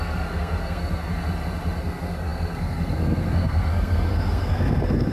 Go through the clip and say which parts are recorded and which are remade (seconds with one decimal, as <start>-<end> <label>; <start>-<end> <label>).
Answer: 0.0-1.1 remade; 1.1-1.8 recorded; 1.8-5.1 remade